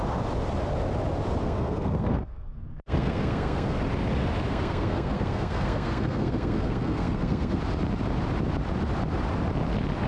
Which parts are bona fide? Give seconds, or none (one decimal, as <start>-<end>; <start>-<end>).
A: 0.0-1.4; 3.8-4.5; 7.6-10.1

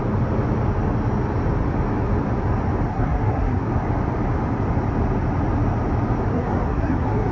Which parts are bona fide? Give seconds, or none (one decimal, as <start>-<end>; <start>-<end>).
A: 0.0-2.9; 3.7-6.3

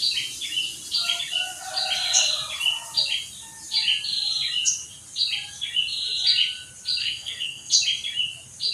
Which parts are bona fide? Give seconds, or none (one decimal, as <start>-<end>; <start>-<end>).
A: 0.0-7.0; 7.7-8.7

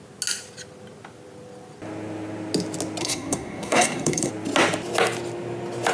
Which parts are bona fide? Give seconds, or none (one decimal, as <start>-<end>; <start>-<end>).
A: 0.0-3.0; 4.3-5.9

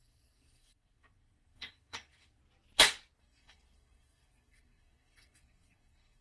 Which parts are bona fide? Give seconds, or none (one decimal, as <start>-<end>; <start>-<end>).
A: 2.4-3.2

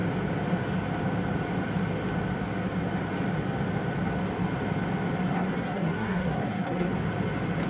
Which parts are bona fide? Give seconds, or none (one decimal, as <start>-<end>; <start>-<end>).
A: 0.0-5.3; 6.9-7.7

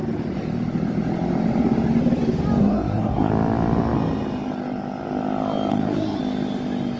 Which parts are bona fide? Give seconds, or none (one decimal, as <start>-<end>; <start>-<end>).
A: 0.0-2.6; 3.3-5.7; 6.2-7.0

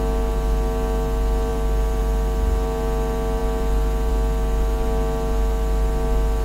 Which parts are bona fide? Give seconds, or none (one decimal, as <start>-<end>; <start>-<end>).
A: 0.0-6.4